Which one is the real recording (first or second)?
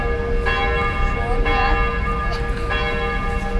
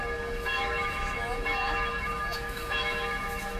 first